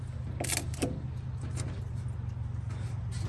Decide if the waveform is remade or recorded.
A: recorded